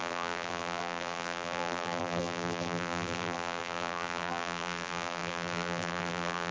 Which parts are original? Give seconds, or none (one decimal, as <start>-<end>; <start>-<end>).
none